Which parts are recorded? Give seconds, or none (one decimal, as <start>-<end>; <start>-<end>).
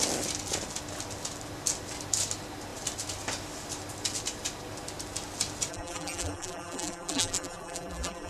0.0-5.7